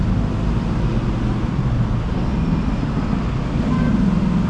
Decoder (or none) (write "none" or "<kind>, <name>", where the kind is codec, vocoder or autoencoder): none